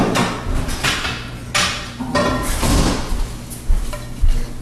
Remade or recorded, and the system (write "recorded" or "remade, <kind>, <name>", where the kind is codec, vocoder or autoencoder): recorded